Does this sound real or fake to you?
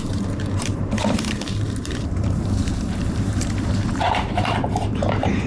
fake